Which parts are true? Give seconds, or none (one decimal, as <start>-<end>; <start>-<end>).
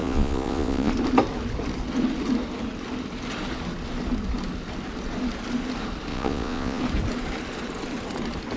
0.9-6.1; 6.8-8.6